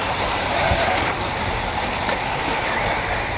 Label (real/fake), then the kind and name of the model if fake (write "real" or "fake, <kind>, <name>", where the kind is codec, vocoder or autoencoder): real